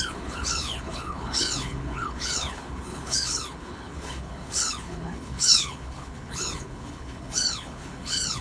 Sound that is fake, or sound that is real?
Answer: fake